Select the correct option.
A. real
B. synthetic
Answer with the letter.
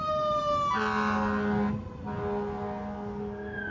A